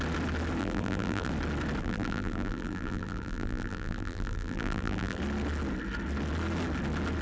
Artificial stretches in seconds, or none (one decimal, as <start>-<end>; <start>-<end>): 0.6-1.3; 1.8-5.2